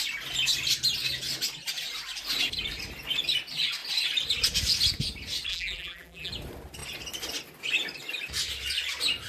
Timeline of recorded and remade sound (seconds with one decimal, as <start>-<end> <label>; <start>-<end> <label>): 0.0-5.5 recorded; 5.5-6.3 remade; 6.3-9.3 recorded